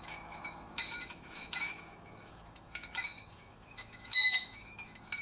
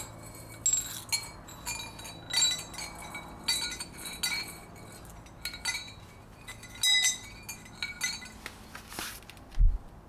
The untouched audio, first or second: second